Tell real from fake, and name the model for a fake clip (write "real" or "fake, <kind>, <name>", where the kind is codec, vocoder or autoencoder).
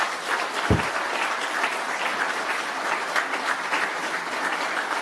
real